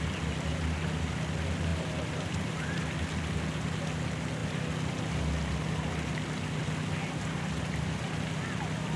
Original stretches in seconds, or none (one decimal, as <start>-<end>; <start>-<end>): 0.0-1.7; 2.8-9.0